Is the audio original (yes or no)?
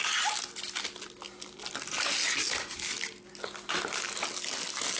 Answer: yes